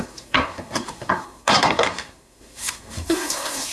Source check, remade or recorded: remade